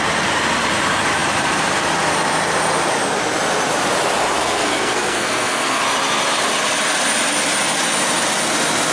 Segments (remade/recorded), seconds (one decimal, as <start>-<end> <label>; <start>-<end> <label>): 0.0-4.4 recorded; 4.4-5.8 remade; 5.8-8.9 recorded